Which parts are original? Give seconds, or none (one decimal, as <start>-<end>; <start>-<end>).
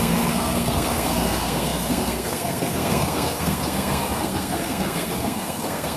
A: none